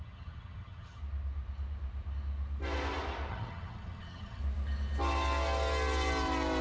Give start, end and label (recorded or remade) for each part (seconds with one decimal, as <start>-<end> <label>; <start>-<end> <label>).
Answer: 0.0-1.0 remade; 1.0-3.3 recorded; 3.3-4.4 remade; 4.4-6.6 recorded